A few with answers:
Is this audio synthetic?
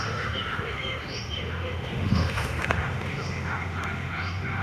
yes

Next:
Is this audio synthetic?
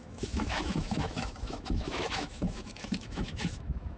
yes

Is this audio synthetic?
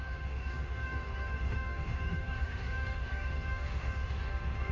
yes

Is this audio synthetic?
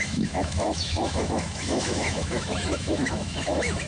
yes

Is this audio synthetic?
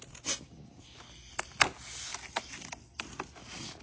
no